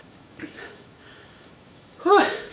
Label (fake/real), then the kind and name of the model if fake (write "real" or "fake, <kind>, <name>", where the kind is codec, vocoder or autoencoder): fake, autoencoder, DAC-VAE